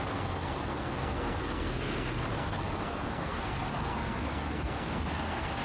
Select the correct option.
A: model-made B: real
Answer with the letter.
A